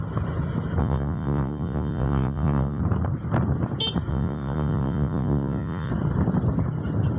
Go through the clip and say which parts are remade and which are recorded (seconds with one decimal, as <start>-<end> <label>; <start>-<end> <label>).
0.0-0.8 recorded; 0.8-2.8 remade; 2.8-4.1 recorded; 4.1-5.9 remade; 5.9-7.2 recorded